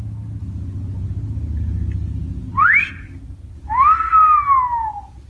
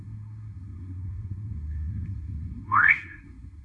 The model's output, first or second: second